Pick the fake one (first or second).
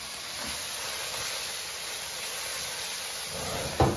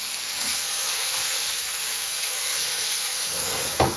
second